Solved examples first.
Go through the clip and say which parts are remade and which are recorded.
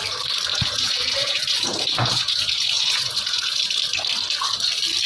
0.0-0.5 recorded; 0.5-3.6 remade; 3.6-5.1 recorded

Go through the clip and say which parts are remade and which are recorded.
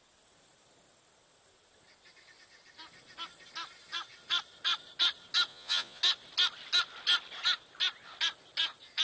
0.0-5.5 recorded; 5.5-6.0 remade; 6.0-9.0 recorded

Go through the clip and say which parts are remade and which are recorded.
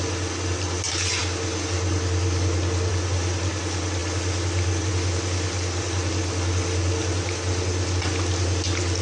0.0-9.0 recorded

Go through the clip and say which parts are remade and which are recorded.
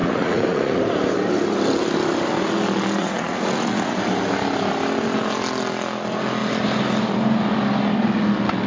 0.0-0.8 remade; 0.8-3.0 recorded; 3.0-3.9 remade; 3.9-8.7 recorded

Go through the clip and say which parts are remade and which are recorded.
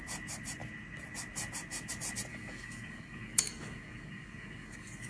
0.0-2.3 recorded; 2.3-5.1 remade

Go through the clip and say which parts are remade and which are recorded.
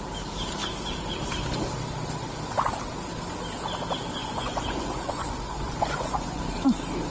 0.0-4.2 recorded; 4.2-6.4 remade; 6.4-7.1 recorded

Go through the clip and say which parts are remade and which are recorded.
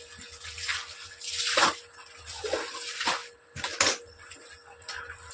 0.0-0.7 recorded; 0.7-1.3 remade; 1.3-5.3 recorded